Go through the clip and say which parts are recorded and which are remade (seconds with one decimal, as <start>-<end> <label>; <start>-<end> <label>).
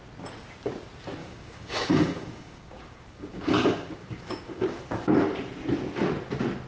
0.0-1.2 recorded; 1.2-5.2 remade; 5.2-6.7 recorded